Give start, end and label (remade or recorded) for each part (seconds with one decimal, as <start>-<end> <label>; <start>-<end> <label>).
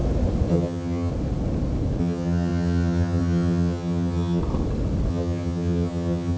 0.0-0.5 recorded; 0.5-1.1 remade; 1.1-2.0 recorded; 2.0-4.4 remade; 4.4-5.1 recorded; 5.1-6.4 remade